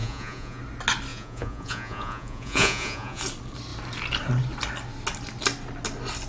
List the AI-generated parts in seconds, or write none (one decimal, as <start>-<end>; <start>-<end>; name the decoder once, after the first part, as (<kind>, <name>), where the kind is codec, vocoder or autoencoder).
0.0-0.6 (vocoder, Vocos); 1.1-3.2